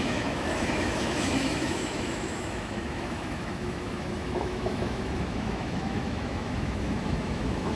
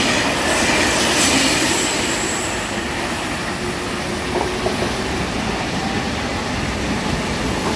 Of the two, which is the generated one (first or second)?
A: first